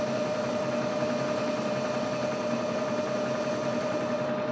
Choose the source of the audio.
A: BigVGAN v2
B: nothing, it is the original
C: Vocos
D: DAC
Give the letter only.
B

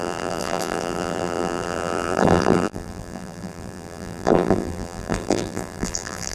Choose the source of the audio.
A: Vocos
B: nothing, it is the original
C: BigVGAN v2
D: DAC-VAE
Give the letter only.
C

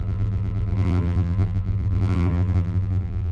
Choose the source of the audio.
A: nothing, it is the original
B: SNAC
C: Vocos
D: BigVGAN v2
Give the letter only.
D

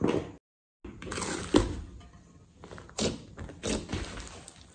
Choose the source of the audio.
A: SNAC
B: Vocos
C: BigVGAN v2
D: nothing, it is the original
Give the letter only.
D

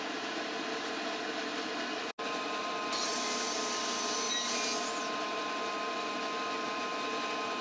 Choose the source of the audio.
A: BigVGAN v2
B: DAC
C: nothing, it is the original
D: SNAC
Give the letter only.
C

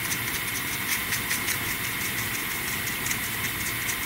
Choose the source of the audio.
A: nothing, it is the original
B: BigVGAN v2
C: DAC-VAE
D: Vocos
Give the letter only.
A